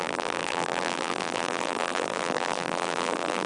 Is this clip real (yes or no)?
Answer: no